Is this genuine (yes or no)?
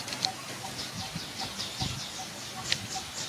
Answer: yes